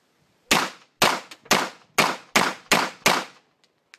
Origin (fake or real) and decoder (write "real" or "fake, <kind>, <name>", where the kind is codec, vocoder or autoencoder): real